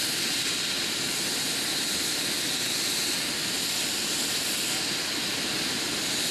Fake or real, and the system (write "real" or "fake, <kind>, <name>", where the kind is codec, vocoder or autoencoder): real